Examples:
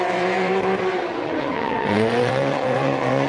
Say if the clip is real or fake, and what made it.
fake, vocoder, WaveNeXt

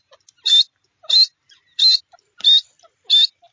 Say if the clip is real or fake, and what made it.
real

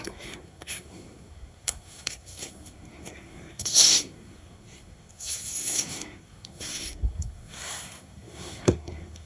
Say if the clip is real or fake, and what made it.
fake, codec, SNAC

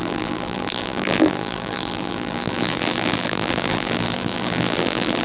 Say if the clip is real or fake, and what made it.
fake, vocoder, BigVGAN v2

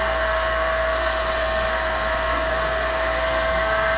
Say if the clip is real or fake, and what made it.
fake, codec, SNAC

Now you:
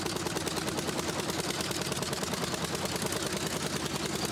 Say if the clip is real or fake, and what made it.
real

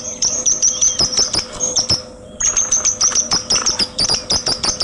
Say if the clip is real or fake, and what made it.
fake, vocoder, BigVGAN v2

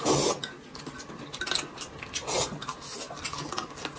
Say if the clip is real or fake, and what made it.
real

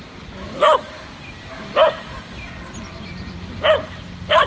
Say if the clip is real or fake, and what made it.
real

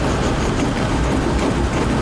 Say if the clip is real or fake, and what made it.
real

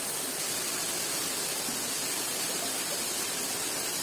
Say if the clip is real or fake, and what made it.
real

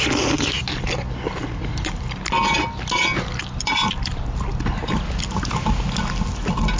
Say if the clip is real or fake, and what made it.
real